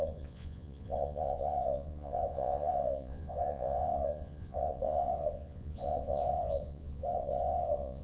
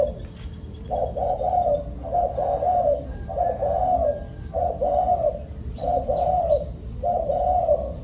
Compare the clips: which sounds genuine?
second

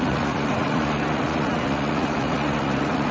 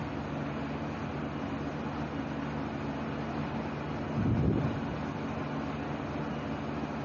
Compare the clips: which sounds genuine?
second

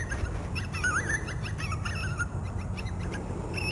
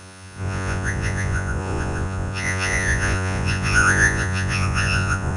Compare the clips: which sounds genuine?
first